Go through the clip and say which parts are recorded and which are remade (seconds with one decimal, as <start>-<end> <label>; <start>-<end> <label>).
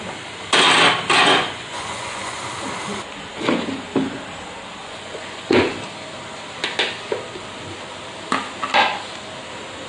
0.0-1.2 recorded; 1.2-2.4 remade; 2.4-4.8 recorded; 4.8-5.6 remade; 5.6-9.9 recorded